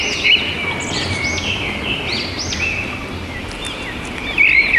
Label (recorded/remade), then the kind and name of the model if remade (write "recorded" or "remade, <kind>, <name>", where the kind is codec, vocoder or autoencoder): recorded